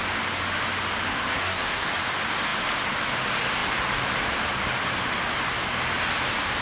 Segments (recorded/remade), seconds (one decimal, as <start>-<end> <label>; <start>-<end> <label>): 0.0-1.1 recorded; 1.1-1.9 remade; 1.9-6.6 recorded